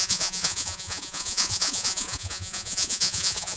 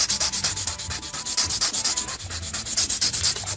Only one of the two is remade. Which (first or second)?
first